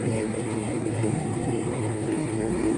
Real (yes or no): no